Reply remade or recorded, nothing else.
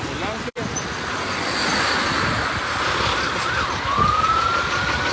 recorded